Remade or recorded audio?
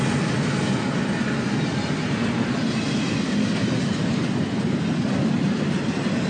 recorded